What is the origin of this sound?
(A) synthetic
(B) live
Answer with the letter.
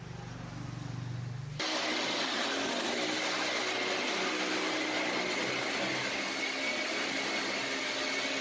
B